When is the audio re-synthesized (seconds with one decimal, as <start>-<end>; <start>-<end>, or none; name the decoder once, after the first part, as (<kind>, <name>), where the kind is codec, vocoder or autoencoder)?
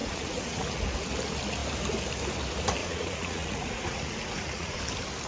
0.0-0.7 (vocoder, Vocos); 2.8-4.8